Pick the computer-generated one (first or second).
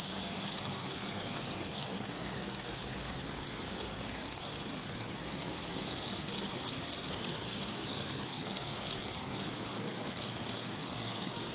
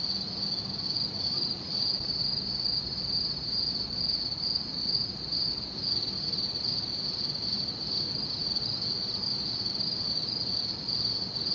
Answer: first